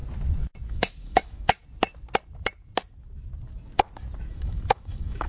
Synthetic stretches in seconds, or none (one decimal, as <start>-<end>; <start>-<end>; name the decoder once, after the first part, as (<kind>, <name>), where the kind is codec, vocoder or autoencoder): 0.7-1.6 (autoencoder, DAC-VAE); 4.3-5.3